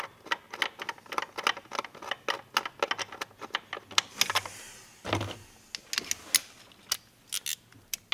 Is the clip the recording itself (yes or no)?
yes